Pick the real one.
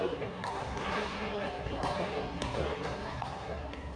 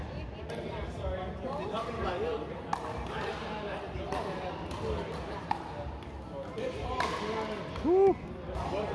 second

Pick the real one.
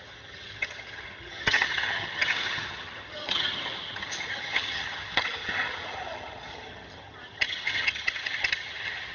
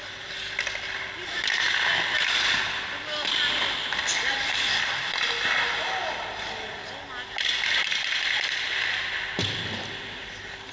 second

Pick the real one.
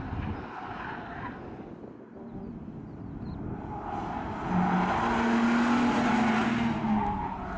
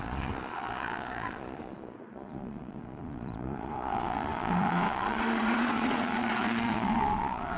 first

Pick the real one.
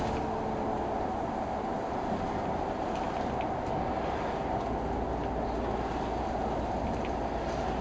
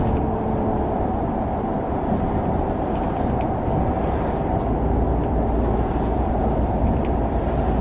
first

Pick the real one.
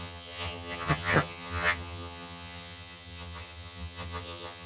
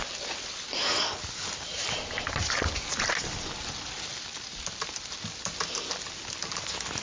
second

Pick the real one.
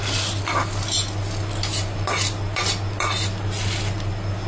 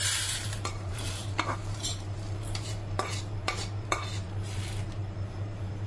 first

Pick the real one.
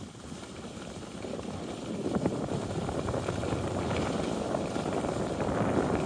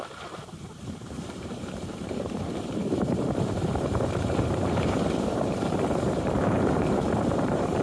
first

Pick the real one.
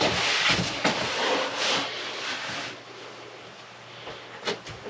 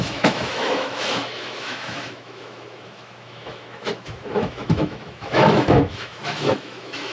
first